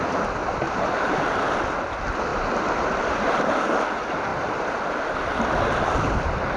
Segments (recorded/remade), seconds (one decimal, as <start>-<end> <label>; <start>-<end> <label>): 0.0-0.4 recorded; 0.4-1.6 remade; 1.6-4.3 recorded; 4.3-5.0 remade; 5.0-6.6 recorded